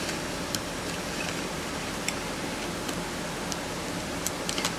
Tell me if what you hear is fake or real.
fake